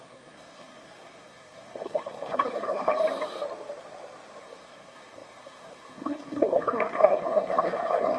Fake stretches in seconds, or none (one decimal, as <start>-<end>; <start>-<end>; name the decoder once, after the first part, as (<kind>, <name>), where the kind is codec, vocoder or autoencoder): 0.0-2.9 (codec, SNAC); 4.4-8.2